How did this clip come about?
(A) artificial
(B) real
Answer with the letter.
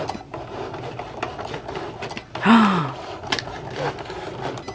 B